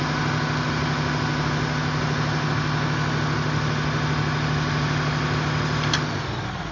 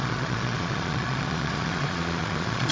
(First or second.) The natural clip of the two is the first